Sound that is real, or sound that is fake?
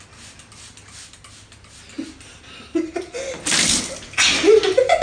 real